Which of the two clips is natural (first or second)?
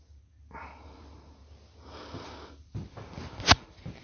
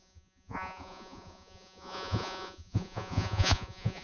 first